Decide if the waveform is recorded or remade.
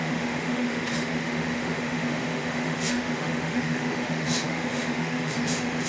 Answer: remade